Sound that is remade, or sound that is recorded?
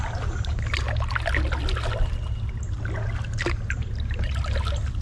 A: recorded